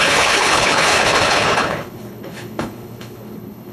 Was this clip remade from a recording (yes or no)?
yes